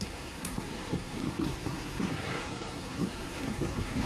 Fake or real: fake